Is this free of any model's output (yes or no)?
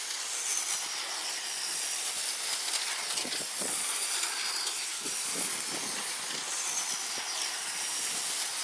yes